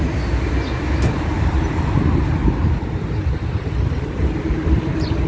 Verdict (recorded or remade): remade